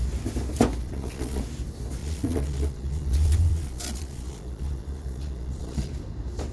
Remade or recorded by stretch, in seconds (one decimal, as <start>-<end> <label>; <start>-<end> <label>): 0.0-0.8 recorded; 0.8-1.4 remade; 1.4-2.0 recorded; 2.0-5.9 remade; 5.9-6.5 recorded